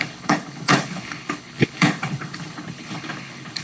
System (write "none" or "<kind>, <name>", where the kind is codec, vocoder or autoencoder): codec, HILCodec